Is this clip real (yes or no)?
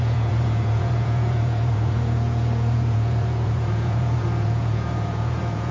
no